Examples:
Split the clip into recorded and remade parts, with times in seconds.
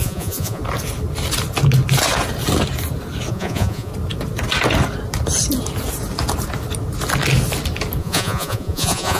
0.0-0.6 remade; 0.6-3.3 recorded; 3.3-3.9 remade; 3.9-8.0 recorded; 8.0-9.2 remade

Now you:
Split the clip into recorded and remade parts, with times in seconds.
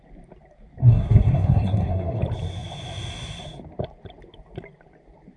0.0-0.8 recorded; 0.8-2.2 remade; 2.2-5.4 recorded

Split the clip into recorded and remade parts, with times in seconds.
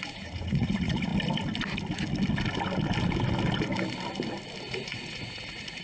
0.0-1.1 remade; 1.1-4.6 recorded; 4.6-5.8 remade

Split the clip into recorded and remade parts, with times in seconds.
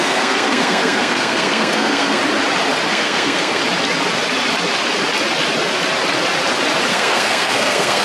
0.0-2.2 remade; 2.2-2.9 recorded; 2.9-3.6 remade; 3.6-6.9 recorded; 6.9-8.0 remade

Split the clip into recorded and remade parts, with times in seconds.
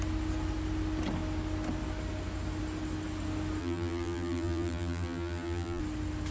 0.0-3.6 recorded; 3.6-5.8 remade; 5.8-6.3 recorded